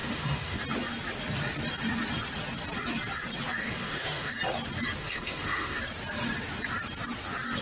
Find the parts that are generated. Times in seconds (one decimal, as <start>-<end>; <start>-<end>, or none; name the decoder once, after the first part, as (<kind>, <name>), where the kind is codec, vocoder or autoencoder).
0.0-0.6 (autoencoder, DAC-VAE); 3.6-4.3; 5.0-5.8